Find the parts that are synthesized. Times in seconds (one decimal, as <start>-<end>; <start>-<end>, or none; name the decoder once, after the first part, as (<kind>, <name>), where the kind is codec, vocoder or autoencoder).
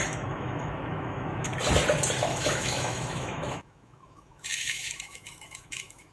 0.0-1.5 (autoencoder, DAC-VAE); 2.2-6.1